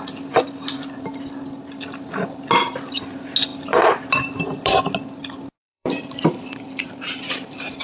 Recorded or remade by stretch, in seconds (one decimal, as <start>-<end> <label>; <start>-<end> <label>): 0.0-5.6 recorded; 5.6-7.8 remade